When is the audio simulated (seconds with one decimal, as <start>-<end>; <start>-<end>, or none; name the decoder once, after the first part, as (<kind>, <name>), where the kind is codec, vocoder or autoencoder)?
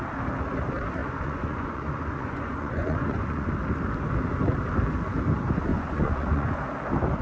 1.0-3.5 (vocoder, Vocos); 5.7-6.6